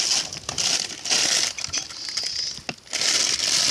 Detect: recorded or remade recorded